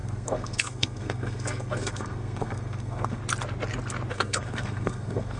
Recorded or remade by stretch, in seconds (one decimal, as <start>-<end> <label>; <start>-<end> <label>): 0.0-3.2 remade; 3.2-4.1 recorded; 4.1-5.4 remade